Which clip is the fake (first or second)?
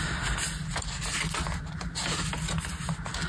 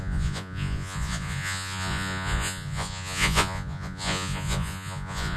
second